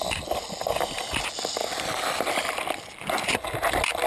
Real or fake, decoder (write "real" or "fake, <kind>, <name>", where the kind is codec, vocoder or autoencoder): real